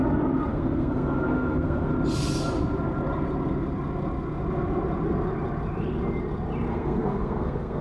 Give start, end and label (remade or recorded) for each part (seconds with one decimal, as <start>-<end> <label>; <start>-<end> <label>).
0.0-0.5 recorded; 0.5-1.9 remade; 1.9-6.7 recorded; 6.7-7.8 remade